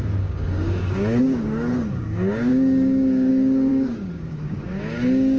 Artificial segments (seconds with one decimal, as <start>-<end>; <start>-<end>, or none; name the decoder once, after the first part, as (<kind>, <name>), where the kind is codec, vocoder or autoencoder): 0.0-5.4 (codec, DAC)